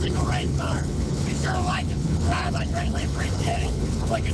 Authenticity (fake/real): fake